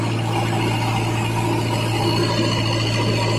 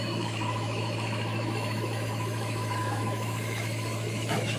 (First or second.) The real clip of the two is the first